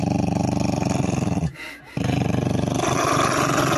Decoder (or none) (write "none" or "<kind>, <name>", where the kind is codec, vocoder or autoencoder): none